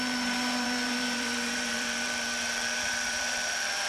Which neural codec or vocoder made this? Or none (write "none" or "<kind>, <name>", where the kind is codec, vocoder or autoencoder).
vocoder, BigVGAN v2